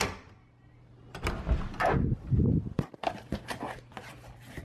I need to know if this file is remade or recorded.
recorded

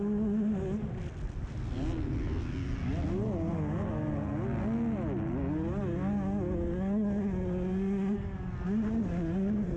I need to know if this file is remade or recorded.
recorded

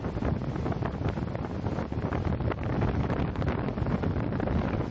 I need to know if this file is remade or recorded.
recorded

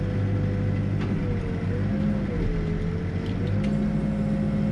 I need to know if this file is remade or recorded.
recorded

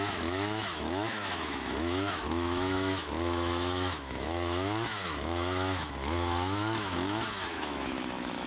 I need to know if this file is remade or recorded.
remade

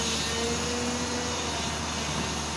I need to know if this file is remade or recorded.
recorded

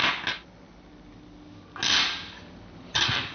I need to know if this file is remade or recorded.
recorded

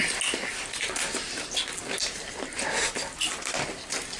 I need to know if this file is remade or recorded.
recorded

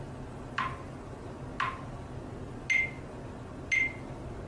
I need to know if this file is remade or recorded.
recorded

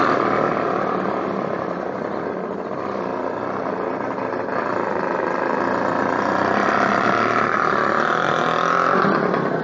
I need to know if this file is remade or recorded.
recorded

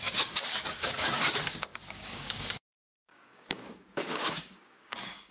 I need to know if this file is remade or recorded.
remade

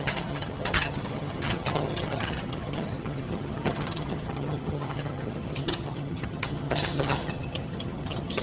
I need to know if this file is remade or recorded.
remade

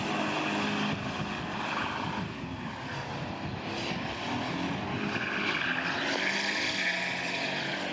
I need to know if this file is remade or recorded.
recorded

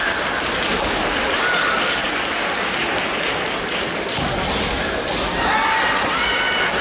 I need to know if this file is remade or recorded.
recorded